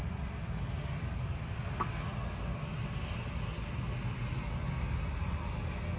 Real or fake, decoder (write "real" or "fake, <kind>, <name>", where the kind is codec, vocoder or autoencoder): real